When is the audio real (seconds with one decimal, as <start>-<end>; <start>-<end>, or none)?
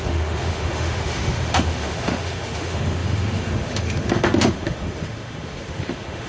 none